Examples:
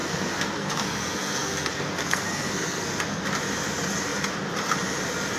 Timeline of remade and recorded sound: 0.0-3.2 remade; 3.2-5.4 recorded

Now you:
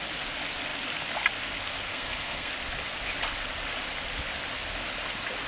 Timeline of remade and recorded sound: 0.0-1.9 recorded; 1.9-2.5 remade; 2.5-5.5 recorded